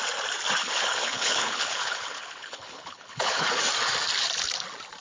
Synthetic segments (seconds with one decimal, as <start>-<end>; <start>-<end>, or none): 0.6-3.6